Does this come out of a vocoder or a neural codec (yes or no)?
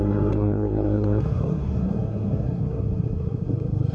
yes